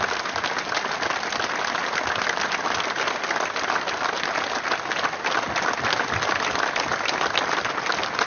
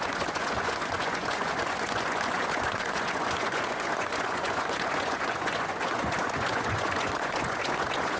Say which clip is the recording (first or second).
first